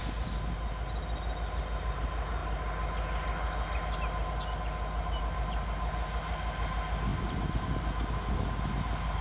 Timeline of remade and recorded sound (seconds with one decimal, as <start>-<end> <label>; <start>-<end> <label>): 0.0-9.2 recorded